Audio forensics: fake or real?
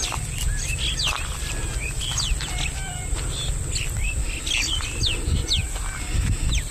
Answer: real